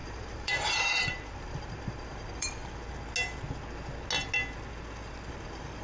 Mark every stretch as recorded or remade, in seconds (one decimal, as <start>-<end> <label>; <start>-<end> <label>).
0.0-2.6 remade; 2.6-5.3 recorded; 5.3-5.8 remade